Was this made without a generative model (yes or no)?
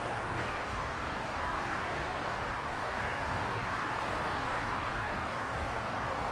no